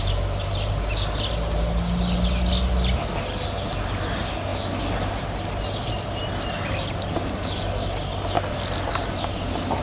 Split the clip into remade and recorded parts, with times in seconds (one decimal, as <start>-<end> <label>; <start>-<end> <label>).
0.0-9.8 recorded